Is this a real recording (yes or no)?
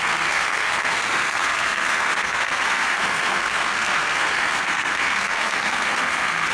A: no